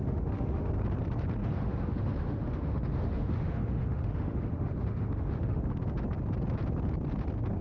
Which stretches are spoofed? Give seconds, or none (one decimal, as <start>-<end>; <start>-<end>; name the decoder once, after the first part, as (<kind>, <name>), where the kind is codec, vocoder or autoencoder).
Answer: 0.0-0.7 (autoencoder, DAC-VAE); 1.4-5.6

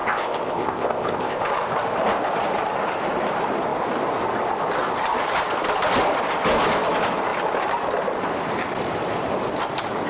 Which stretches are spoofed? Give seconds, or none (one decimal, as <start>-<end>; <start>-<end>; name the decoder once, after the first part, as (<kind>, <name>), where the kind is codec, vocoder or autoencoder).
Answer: 0.0-1.4 (codec, ZipCodec)